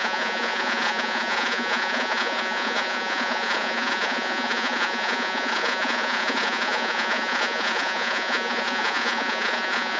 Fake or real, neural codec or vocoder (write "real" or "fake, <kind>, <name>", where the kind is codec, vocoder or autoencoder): fake, vocoder, Vocos